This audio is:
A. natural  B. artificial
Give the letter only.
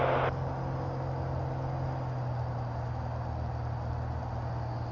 A